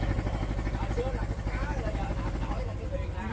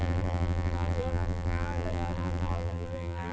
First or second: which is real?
first